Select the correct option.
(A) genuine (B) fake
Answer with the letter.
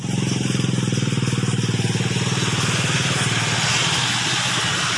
A